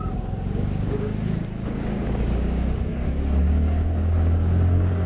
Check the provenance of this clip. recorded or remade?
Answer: remade